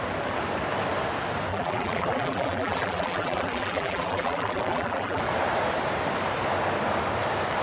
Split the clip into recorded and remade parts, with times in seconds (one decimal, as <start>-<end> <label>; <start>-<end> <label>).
0.0-1.5 recorded; 1.5-5.2 remade; 5.2-7.6 recorded